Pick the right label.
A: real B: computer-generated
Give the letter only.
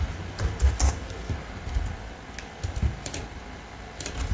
A